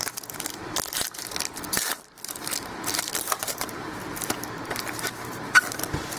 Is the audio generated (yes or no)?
yes